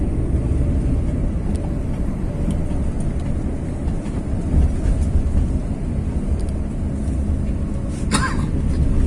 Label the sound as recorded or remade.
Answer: recorded